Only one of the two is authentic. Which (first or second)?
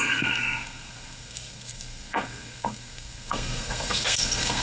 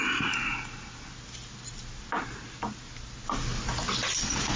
second